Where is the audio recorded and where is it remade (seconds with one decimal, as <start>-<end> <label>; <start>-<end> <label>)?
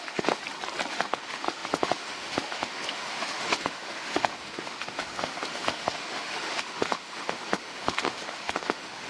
0.0-0.4 remade; 0.4-0.9 recorded; 0.9-9.1 remade